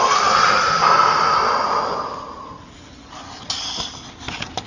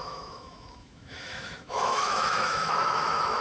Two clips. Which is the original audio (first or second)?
first